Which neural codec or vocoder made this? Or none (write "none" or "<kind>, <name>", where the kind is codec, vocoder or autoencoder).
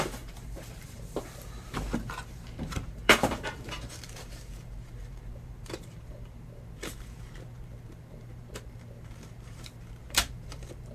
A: vocoder, BigVGAN v2